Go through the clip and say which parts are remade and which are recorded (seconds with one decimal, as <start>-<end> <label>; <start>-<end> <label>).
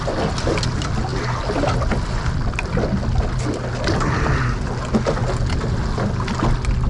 0.0-6.9 recorded